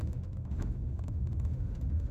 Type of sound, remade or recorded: remade